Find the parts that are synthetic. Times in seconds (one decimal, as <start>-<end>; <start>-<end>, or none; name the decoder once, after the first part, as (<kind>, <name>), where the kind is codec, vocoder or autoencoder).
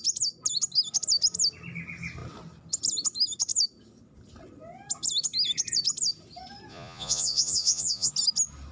6.7-8.1 (vocoder, Vocos)